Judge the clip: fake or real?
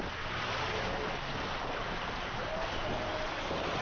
real